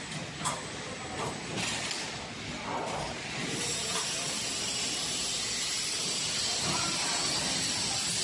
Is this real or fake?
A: real